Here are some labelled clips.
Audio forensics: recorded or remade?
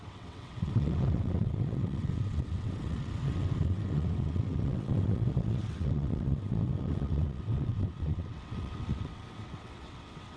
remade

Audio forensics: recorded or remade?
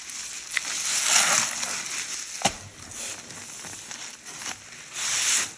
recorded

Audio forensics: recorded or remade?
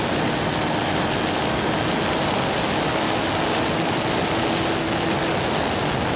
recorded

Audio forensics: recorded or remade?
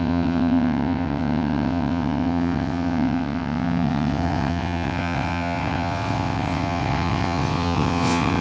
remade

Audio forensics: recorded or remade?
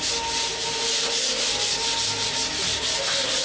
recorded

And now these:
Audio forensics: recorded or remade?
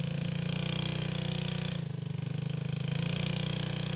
recorded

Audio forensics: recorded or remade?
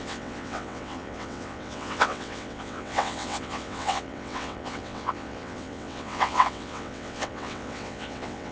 remade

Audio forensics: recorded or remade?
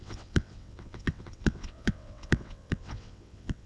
remade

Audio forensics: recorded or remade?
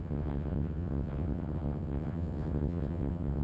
remade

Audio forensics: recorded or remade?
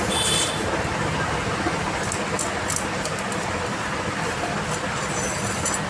recorded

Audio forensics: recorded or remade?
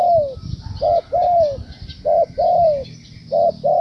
recorded